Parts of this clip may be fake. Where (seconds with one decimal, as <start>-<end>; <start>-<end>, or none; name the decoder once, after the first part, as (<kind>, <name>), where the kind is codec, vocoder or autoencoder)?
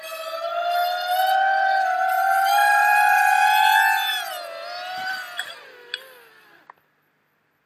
none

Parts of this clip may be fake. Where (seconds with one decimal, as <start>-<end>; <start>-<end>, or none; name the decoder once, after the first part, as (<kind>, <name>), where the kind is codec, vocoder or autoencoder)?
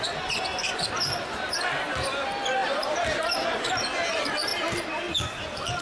2.6-3.8 (vocoder, BigVGAN v2); 4.5-5.8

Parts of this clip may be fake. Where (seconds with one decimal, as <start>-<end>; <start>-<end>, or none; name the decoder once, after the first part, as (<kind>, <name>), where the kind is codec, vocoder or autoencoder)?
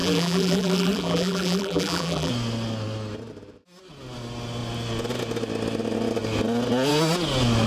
0.0-2.3 (vocoder, BigVGAN v2)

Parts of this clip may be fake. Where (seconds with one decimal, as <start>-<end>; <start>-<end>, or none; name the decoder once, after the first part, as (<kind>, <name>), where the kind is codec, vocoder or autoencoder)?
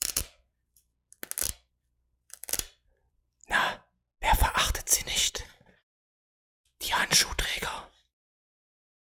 0.0-0.9 (vocoder, BigVGAN v2); 1.5-3.4; 5.3-9.0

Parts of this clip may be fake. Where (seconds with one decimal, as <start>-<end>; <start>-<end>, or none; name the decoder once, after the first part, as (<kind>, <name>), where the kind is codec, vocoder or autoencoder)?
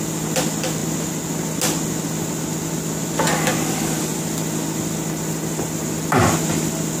0.0-0.8 (vocoder, BigVGAN v2); 4.0-7.0